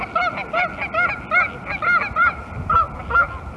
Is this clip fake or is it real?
real